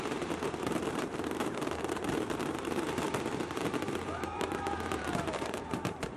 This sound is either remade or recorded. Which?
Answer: remade